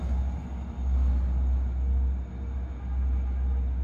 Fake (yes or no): no